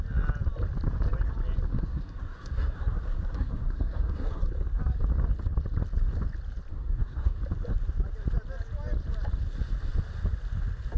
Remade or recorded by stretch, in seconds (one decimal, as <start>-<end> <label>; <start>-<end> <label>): 0.0-1.7 recorded; 1.7-4.8 remade; 4.8-6.7 recorded; 6.7-7.4 remade; 7.4-11.0 recorded